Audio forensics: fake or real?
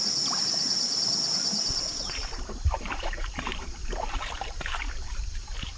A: fake